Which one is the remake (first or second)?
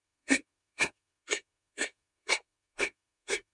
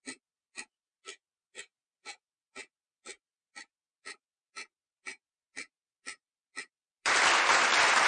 first